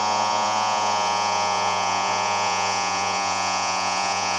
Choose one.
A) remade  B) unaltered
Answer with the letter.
A